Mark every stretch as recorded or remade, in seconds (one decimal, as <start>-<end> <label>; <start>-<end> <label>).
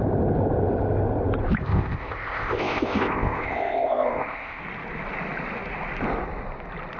0.0-1.6 recorded; 1.6-4.6 remade; 4.6-7.0 recorded